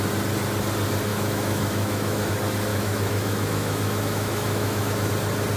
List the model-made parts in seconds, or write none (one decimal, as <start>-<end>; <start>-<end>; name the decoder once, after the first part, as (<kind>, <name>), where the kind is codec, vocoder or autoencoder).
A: 1.1-2.3 (autoencoder, DAC-VAE); 2.7-5.1